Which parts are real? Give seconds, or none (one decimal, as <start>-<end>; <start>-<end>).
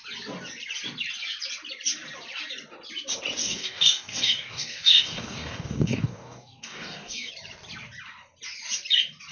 0.0-3.4; 7.3-9.3